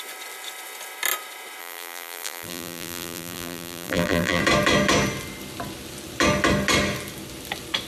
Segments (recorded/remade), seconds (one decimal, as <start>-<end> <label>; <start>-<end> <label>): 0.0-1.6 recorded; 1.6-4.4 remade; 4.4-7.9 recorded